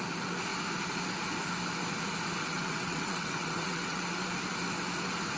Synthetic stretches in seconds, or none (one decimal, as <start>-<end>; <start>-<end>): 2.4-4.0